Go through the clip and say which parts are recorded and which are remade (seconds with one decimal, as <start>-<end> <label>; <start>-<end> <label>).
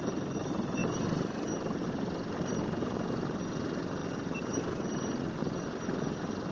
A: 0.0-0.8 recorded; 0.8-3.5 remade; 3.5-5.4 recorded; 5.4-6.5 remade